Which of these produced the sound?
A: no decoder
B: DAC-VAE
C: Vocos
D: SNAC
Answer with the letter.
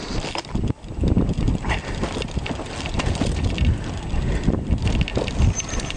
A